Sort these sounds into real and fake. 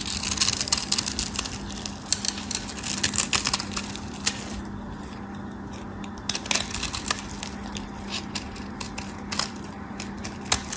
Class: real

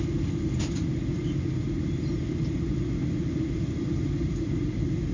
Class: real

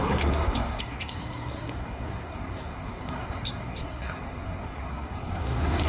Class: fake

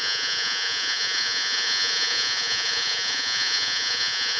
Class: fake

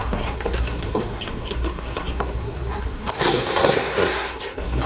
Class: fake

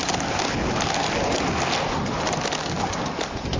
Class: real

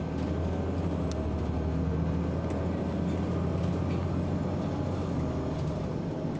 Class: real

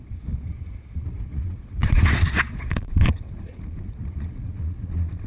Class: fake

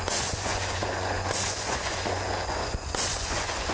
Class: fake